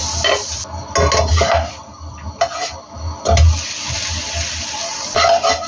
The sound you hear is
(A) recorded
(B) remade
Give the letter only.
A